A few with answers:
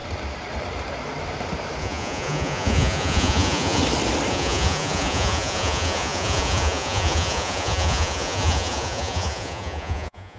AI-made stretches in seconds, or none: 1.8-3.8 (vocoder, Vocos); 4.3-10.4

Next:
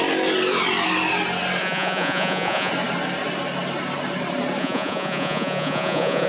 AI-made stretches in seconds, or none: 1.6-2.7 (vocoder, Vocos); 4.6-6.3

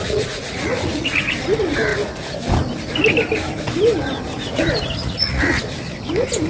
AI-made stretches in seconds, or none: 0.0-1.2 (vocoder, Vocos); 5.0-5.6

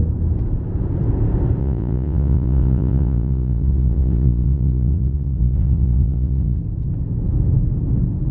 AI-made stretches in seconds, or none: 1.6-6.6 (vocoder, Vocos)

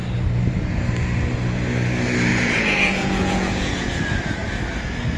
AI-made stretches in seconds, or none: 2.3-3.9 (vocoder, Vocos)

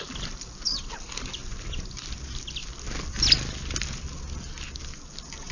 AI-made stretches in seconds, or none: none

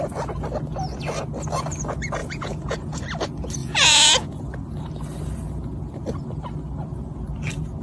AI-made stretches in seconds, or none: 2.2-3.0 (vocoder, Vocos); 3.6-4.4

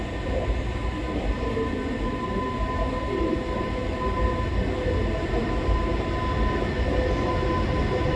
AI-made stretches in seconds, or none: none